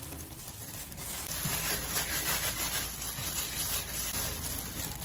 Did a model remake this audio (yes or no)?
no